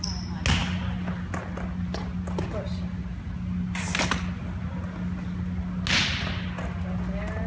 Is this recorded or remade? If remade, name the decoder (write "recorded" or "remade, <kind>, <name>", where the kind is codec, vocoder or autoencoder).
recorded